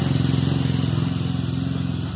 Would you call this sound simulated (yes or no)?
no